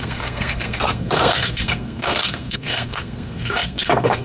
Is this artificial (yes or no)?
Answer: yes